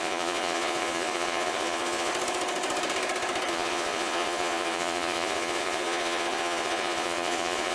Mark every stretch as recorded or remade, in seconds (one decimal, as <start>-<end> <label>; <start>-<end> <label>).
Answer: 0.0-2.1 remade; 2.1-3.5 recorded; 3.5-7.7 remade